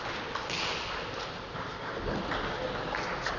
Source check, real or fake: real